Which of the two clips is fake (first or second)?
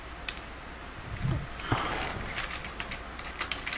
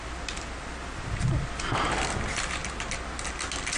first